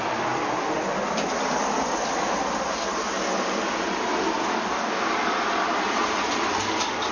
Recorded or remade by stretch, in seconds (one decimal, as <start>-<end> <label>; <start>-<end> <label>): 0.0-4.4 recorded; 4.4-5.1 remade; 5.1-7.1 recorded

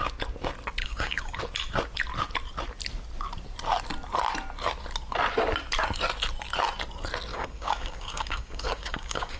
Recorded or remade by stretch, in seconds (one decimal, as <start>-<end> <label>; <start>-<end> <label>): 0.0-0.8 recorded; 0.8-1.4 remade; 1.4-7.3 recorded; 7.3-9.4 remade